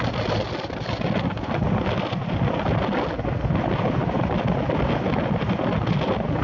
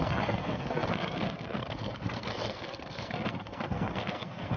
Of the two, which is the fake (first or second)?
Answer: second